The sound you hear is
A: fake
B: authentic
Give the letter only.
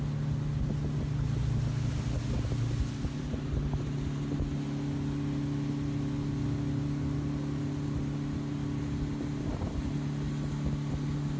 B